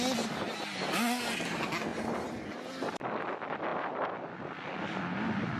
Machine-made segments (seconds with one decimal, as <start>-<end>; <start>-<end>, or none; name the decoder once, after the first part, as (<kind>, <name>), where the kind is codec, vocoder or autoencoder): none